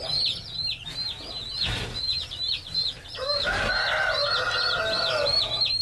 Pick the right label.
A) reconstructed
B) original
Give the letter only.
B